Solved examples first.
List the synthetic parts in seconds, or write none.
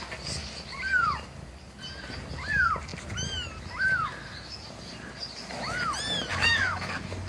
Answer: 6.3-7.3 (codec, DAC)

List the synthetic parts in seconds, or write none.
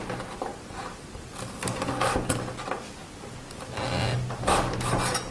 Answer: 0.5-1.1 (vocoder, BigVGAN v2)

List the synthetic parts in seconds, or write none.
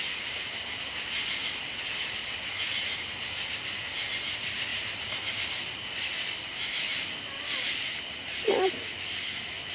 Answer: none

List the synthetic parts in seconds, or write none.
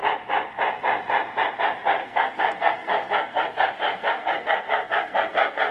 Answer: 2.0-5.7 (codec, SNAC)